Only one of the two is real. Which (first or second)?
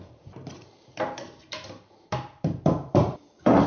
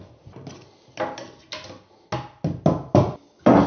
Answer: second